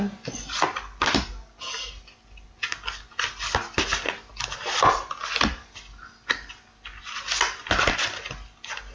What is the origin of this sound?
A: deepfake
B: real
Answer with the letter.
B